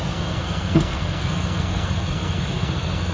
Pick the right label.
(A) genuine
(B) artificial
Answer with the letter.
B